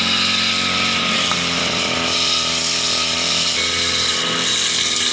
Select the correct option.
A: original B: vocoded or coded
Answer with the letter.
A